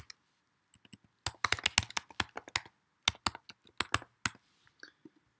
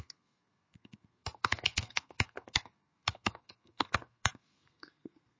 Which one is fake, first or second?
second